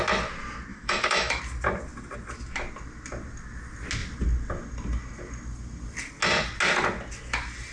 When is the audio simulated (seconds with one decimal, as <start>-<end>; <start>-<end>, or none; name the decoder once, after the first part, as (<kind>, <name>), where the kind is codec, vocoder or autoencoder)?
0.7-1.4 (autoencoder, DAC-VAE)